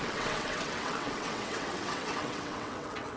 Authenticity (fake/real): fake